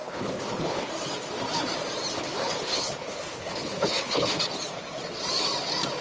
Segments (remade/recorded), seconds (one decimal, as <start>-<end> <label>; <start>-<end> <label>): 0.0-0.9 remade; 0.9-2.1 recorded; 2.1-4.4 remade; 4.4-6.0 recorded